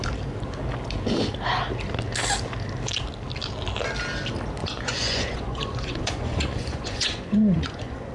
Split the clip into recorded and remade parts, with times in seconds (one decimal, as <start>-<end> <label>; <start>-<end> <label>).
0.0-4.6 recorded; 4.6-8.1 remade